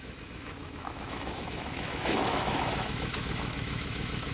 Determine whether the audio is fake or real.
fake